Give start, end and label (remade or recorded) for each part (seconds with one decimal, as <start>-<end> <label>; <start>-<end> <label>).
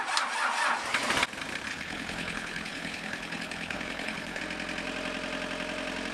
0.0-1.7 recorded; 1.7-4.4 remade; 4.4-6.1 recorded